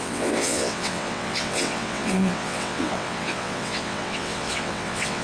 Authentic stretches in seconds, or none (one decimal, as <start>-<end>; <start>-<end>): none